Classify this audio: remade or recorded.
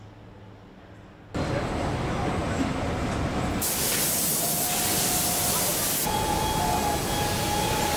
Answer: recorded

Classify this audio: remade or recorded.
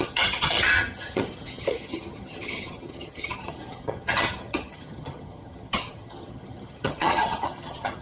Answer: remade